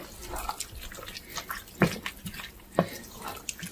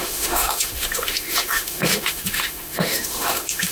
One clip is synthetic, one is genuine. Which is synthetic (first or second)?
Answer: second